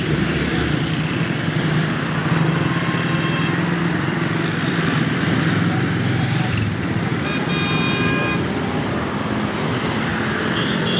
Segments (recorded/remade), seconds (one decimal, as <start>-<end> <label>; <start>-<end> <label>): 0.0-2.2 remade; 2.2-3.8 recorded; 3.8-11.0 remade